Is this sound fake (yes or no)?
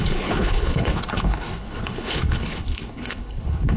yes